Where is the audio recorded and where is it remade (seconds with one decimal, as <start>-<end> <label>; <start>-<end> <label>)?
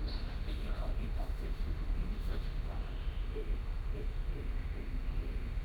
0.0-5.6 remade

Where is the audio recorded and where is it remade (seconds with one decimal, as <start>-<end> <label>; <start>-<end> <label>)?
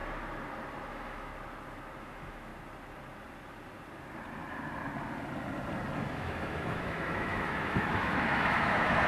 0.0-0.9 recorded; 0.9-1.3 remade; 1.3-2.0 recorded; 2.0-2.5 remade; 2.5-6.1 recorded; 6.1-9.1 remade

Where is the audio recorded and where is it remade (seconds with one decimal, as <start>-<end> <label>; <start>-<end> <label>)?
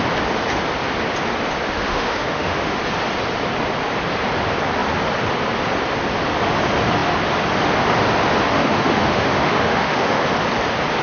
0.0-1.8 recorded; 1.8-2.8 remade; 2.8-8.6 recorded; 8.6-10.2 remade; 10.2-11.0 recorded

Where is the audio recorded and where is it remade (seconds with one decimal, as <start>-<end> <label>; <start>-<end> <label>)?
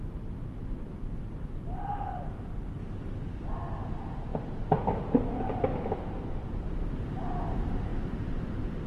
0.0-8.9 recorded